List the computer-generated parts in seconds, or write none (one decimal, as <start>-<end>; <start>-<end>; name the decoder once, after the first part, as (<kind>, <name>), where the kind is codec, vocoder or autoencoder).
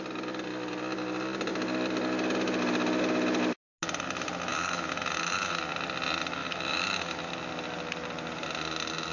4.5-5.6 (autoencoder, DAC-VAE); 6.4-7.3